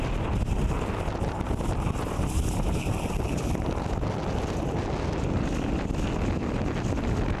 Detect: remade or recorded recorded